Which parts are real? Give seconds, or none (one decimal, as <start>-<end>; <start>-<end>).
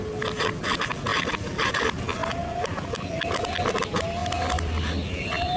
0.0-1.1; 1.7-2.2; 3.7-5.6